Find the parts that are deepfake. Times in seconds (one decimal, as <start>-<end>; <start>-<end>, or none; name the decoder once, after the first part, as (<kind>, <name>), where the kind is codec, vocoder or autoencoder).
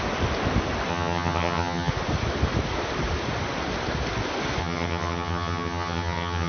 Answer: 0.9-1.9 (vocoder, HiFi-GAN); 4.6-6.5